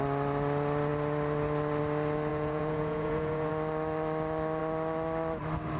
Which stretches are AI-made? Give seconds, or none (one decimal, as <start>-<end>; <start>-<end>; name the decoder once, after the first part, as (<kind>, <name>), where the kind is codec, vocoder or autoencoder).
2.3-3.5 (vocoder, Vocos)